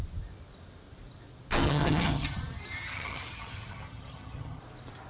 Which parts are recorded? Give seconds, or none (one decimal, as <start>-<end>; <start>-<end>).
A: 0.0-1.5; 4.6-5.1

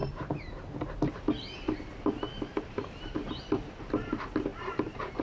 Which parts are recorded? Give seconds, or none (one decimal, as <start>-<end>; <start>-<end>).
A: 0.7-2.5; 3.8-4.5